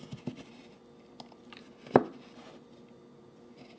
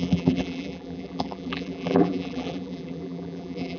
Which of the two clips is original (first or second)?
first